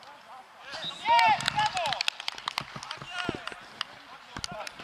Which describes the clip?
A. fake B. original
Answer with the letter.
B